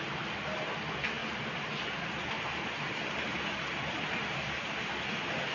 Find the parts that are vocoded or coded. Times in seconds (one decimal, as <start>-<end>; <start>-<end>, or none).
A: none